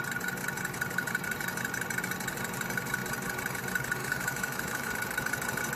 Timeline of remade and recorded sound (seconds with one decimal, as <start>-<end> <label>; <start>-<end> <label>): 0.0-4.0 recorded; 4.0-4.9 remade; 4.9-5.8 recorded